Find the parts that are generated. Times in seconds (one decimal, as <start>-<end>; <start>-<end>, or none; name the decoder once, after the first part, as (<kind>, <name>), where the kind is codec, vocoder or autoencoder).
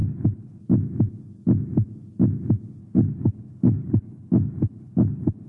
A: 0.0-0.6 (codec, HILCodec); 2.8-5.5